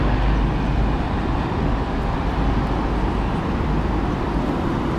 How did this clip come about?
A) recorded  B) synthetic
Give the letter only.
A